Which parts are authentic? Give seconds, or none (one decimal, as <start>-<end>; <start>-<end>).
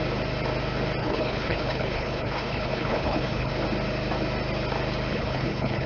0.0-1.0; 3.5-5.1